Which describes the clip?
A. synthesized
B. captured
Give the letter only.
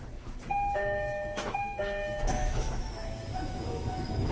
A